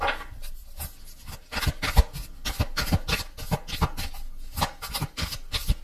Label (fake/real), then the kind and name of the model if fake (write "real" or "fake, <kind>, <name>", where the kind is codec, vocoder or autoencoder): real